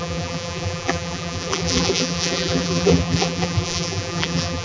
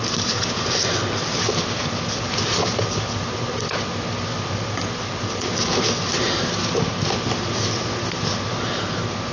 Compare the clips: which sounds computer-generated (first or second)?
first